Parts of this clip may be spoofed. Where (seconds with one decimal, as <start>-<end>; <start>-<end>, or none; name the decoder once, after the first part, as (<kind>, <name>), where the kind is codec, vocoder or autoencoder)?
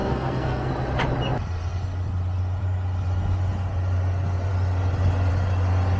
0.0-0.7 (codec, SNAC)